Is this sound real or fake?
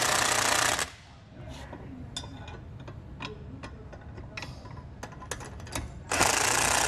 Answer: real